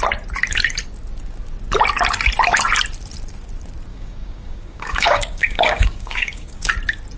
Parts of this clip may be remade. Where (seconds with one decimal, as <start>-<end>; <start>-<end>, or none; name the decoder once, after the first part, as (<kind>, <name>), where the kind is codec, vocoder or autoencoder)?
3.9-6.7 (codec, DAC)